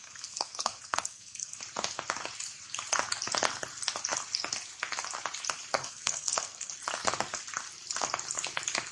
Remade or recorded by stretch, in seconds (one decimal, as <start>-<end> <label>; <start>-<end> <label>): 0.0-1.6 remade; 1.6-5.8 recorded; 5.8-6.7 remade; 6.7-8.9 recorded